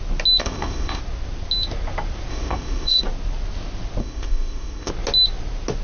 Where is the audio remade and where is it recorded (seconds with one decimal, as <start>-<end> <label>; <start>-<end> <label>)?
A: 0.0-0.4 recorded; 0.4-1.0 remade; 1.0-2.3 recorded; 2.3-3.0 remade; 3.0-4.0 recorded; 4.0-4.9 remade; 4.9-5.8 recorded